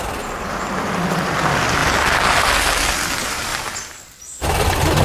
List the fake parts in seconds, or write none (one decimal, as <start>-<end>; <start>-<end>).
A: none